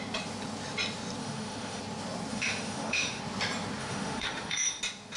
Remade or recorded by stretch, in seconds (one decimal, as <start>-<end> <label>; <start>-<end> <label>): 0.0-1.2 recorded; 1.2-1.8 remade; 1.8-2.3 recorded; 2.3-3.2 remade; 3.2-3.8 recorded; 3.8-4.8 remade; 4.8-5.2 recorded